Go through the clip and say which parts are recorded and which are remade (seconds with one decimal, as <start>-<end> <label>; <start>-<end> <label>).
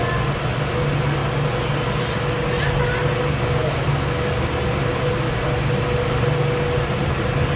0.0-7.6 recorded